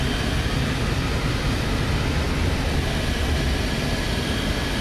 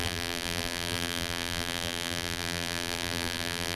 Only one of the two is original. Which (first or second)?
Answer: first